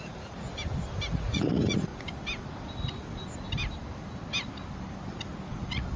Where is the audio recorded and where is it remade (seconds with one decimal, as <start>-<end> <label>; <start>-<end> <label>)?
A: 0.0-0.5 remade; 0.5-1.1 recorded; 1.1-1.9 remade; 1.9-5.5 recorded; 5.5-6.0 remade